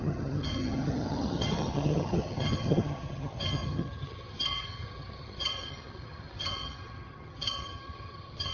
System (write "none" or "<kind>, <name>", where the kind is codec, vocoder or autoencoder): vocoder, HiFi-GAN